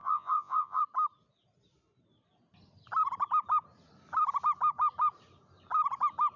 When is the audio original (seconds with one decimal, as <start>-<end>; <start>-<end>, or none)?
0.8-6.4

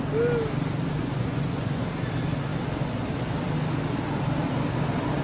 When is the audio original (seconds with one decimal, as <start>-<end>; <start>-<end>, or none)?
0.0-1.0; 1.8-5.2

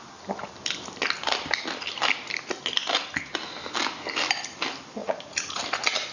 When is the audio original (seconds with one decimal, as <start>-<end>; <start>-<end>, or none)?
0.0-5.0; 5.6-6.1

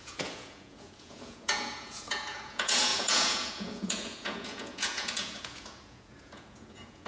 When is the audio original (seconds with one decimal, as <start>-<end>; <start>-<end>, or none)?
none

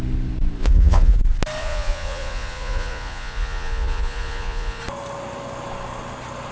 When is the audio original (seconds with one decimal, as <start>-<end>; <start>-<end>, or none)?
0.0-0.6; 1.2-1.6; 4.8-6.5

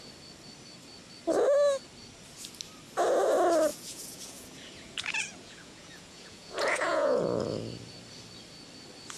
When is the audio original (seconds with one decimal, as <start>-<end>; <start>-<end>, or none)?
0.0-3.7; 7.2-9.2

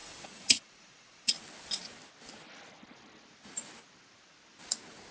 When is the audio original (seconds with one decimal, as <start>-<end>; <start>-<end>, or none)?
1.3-5.1